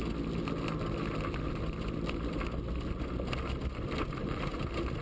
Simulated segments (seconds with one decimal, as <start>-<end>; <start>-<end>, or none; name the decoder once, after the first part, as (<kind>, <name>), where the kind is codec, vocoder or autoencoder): none